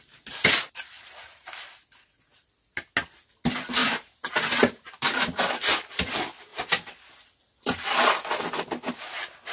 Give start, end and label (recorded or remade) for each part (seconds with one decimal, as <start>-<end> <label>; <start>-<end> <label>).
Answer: 0.0-3.8 recorded; 3.8-5.4 remade; 5.4-9.5 recorded